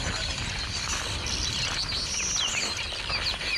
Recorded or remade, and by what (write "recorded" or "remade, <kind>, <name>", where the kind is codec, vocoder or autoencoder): recorded